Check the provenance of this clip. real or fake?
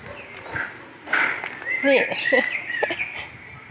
real